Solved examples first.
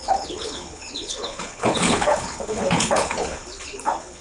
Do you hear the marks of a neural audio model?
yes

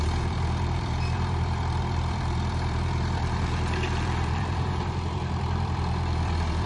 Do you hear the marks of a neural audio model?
yes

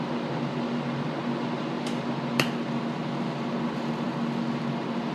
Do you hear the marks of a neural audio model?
no